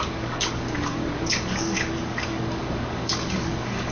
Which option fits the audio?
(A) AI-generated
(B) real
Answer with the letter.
A